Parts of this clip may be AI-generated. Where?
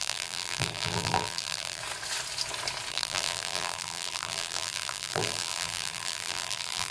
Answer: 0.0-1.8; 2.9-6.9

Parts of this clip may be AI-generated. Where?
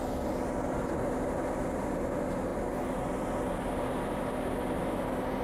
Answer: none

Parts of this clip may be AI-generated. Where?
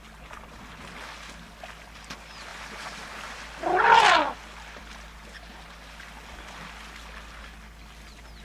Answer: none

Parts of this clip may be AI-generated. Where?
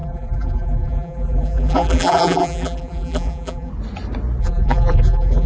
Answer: 0.0-3.7; 4.4-5.5